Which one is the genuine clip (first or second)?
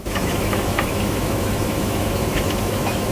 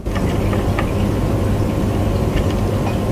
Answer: second